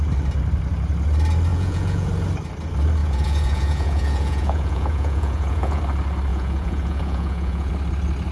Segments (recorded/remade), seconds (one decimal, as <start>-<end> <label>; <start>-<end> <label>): 0.0-1.5 recorded; 1.5-2.1 remade; 2.1-3.0 recorded; 3.0-5.8 remade; 5.8-6.3 recorded; 6.3-7.7 remade; 7.7-8.3 recorded